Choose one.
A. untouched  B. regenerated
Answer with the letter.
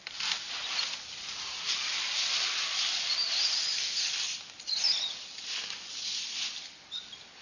A